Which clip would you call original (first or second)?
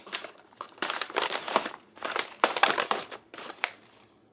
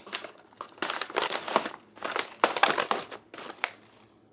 second